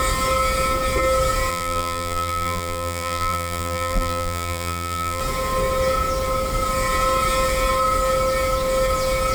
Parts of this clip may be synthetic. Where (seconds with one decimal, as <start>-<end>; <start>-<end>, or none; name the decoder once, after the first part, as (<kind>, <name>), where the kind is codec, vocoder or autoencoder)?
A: 1.5-5.2 (vocoder, BigVGAN v2)